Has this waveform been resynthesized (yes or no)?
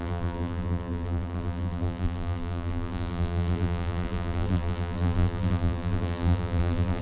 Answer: yes